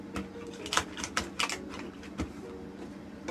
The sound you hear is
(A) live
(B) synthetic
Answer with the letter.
A